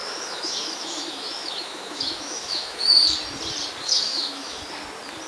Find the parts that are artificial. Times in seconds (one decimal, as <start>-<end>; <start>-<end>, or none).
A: 0.0-2.9; 3.8-4.6